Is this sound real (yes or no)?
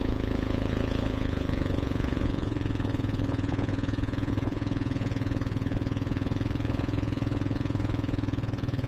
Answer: no